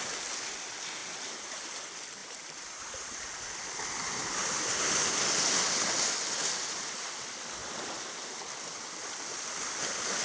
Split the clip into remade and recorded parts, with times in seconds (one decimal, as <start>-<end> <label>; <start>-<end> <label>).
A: 0.0-1.0 recorded; 1.0-1.7 remade; 1.7-2.2 recorded; 2.2-3.3 remade; 3.3-4.2 recorded; 4.2-4.9 remade; 4.9-7.6 recorded; 7.6-8.3 remade; 8.3-10.2 recorded